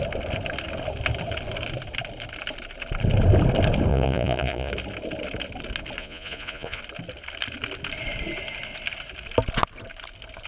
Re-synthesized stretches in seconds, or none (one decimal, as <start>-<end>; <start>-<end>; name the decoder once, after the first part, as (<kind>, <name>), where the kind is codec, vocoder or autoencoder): 3.9-4.7 (vocoder, Vocos); 6.0-6.8